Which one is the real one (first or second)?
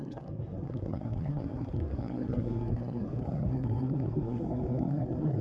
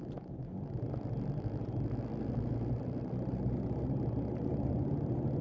second